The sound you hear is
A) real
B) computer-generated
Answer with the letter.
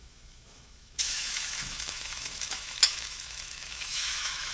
B